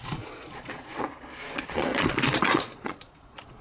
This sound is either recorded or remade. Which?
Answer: remade